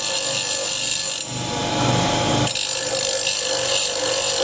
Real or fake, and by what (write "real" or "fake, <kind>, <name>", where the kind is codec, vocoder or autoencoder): real